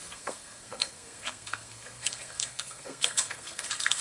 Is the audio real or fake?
fake